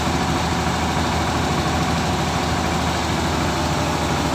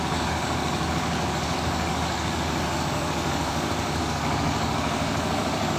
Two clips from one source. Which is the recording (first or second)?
first